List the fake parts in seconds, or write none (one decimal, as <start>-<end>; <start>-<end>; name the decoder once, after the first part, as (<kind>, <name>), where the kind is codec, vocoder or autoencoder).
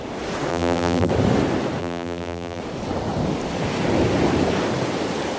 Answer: 0.5-1.1 (vocoder, BigVGAN v2); 1.8-2.6